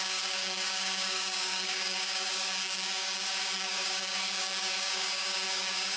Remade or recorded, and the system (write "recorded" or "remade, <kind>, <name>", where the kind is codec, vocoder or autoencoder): remade, codec, DAC